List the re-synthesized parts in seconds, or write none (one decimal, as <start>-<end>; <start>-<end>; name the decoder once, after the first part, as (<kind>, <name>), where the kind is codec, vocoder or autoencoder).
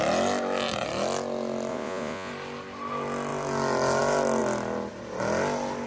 1.7-2.3 (vocoder, Vocos)